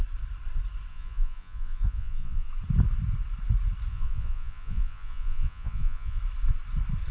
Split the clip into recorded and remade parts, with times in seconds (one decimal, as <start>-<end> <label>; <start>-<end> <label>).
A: 0.0-0.9 recorded; 0.9-2.5 remade; 2.5-3.9 recorded; 3.9-6.2 remade; 6.2-7.1 recorded